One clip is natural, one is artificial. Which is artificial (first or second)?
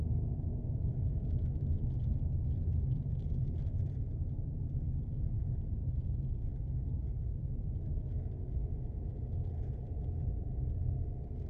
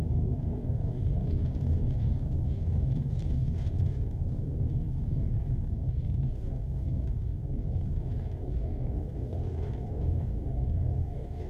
second